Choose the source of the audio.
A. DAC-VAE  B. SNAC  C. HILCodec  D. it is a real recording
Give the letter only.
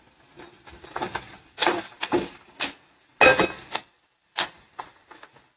D